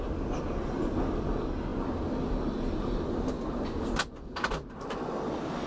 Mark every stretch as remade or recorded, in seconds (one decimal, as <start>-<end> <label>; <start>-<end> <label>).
0.0-5.7 recorded